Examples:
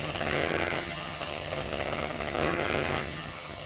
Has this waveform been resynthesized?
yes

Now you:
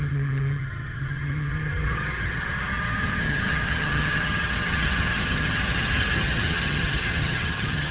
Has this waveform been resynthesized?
yes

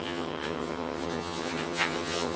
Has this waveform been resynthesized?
yes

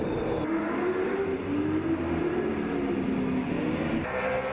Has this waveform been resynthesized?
no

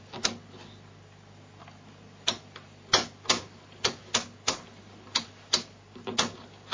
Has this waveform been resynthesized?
no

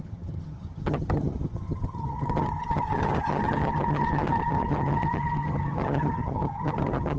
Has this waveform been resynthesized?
yes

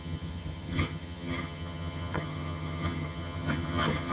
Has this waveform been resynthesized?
yes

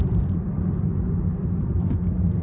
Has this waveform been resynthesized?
no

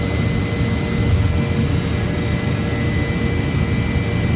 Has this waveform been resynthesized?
no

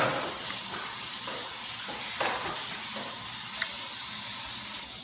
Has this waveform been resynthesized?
no